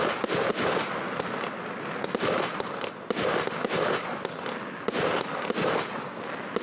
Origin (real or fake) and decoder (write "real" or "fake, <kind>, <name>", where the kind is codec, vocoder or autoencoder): real